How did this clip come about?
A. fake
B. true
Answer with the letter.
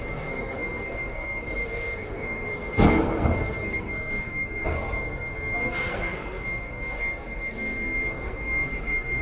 A